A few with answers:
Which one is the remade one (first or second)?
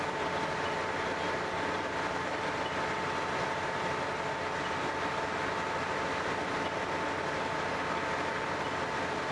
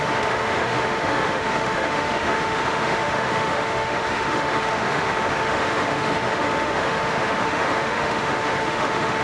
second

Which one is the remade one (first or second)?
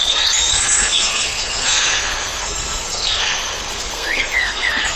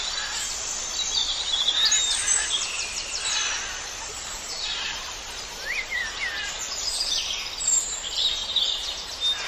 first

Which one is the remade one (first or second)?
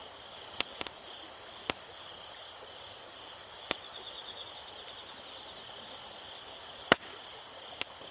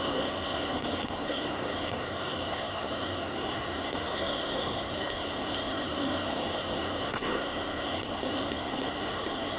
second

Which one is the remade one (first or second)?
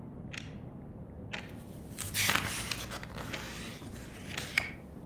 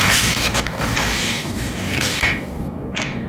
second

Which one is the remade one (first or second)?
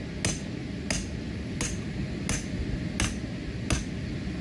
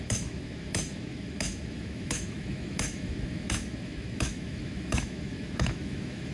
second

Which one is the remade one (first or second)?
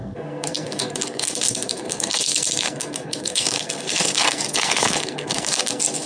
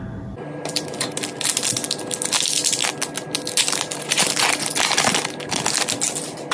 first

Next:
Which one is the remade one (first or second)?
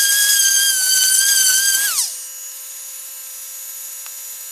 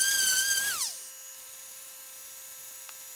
second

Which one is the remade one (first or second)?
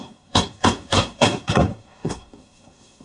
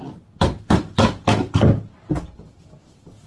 first